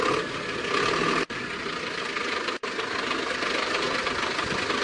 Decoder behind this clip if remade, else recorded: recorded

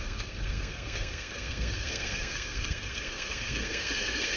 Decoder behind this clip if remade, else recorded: remade, codec, SNAC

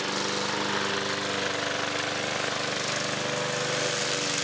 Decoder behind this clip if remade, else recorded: recorded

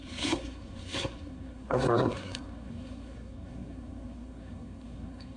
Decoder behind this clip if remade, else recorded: remade, codec, SNAC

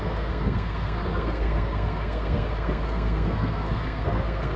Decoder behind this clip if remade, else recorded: remade, codec, SNAC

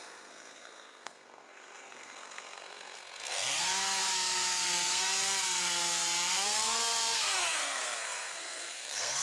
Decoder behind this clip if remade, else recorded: remade, codec, SNAC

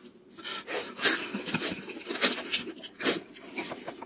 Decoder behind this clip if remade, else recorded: recorded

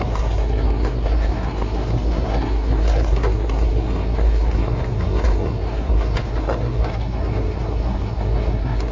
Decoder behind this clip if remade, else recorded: remade, codec, SNAC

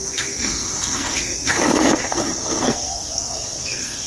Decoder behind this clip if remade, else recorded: remade, codec, SNAC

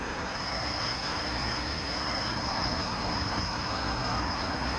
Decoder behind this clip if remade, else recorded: remade, codec, SNAC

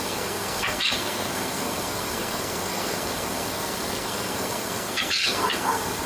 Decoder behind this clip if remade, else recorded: remade, codec, SNAC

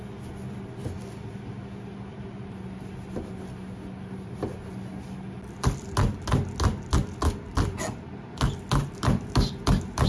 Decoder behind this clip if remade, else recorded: recorded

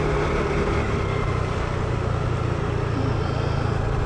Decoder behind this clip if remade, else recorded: recorded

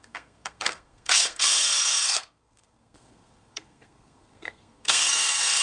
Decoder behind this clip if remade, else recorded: remade, codec, SNAC